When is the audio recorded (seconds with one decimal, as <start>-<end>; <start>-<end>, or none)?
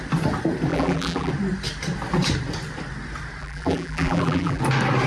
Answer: 0.0-0.7; 1.3-3.4; 4.6-5.1